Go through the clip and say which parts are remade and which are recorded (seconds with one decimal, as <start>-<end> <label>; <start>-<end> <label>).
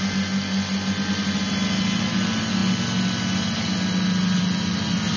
0.0-5.2 recorded